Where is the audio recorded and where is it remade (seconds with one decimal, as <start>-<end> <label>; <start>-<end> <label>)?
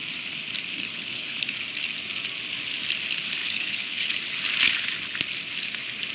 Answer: 0.0-0.7 recorded; 0.7-1.4 remade; 1.4-3.4 recorded; 3.4-4.2 remade; 4.2-6.1 recorded